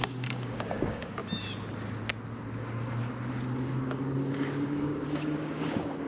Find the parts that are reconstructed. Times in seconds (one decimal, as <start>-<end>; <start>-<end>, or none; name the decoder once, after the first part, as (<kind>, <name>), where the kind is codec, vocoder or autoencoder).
0.0-1.2 (codec, DAC); 3.6-6.1